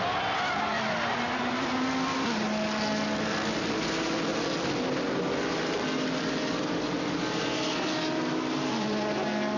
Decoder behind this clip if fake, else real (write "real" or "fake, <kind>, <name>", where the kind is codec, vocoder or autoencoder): real